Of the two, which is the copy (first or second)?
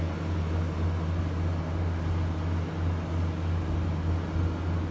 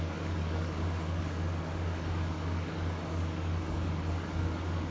second